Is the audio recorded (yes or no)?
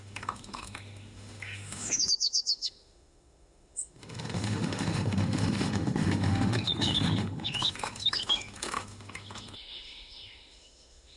no